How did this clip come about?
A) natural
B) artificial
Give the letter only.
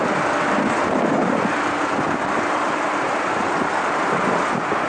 A